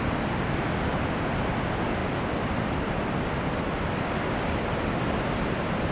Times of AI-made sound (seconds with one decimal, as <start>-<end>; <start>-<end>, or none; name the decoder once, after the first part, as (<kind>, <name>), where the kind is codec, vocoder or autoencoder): none